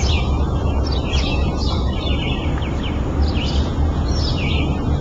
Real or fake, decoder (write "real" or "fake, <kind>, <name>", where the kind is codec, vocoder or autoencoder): real